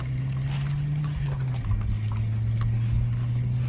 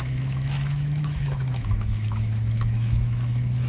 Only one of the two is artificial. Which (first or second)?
second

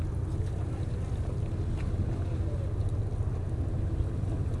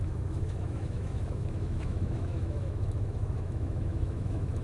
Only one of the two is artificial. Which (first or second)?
second